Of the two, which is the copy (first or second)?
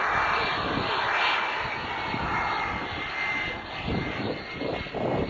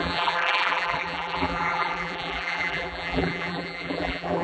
second